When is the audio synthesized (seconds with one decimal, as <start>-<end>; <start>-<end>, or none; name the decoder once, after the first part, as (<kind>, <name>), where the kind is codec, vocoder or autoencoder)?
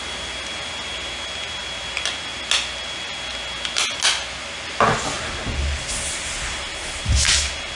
none